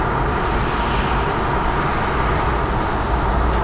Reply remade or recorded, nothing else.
recorded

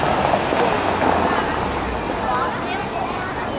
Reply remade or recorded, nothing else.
recorded